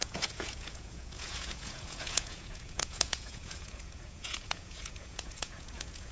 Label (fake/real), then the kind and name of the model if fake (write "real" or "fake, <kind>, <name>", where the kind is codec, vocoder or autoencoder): fake, vocoder, Vocos